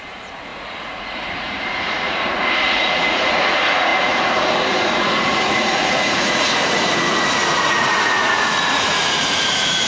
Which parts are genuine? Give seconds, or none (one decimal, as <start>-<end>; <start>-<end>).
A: none